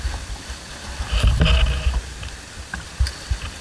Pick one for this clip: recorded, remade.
recorded